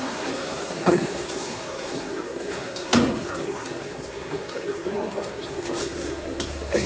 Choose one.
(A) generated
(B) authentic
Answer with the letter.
A